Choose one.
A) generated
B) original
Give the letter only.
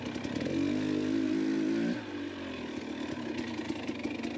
B